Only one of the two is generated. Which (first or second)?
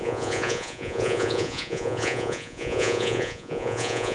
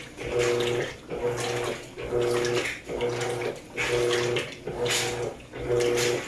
first